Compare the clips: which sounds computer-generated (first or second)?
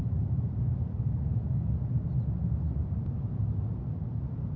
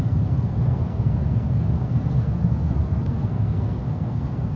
second